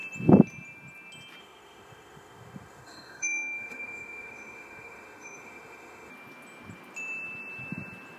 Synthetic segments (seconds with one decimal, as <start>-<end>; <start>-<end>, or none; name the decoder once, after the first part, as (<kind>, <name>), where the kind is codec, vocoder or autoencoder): 1.4-6.1 (autoencoder, DAC-VAE)